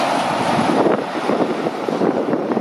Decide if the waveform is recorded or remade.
recorded